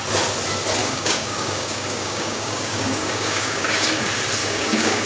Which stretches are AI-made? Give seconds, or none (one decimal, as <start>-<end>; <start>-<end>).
0.8-3.9; 4.4-5.1